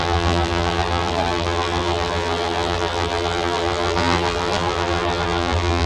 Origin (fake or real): fake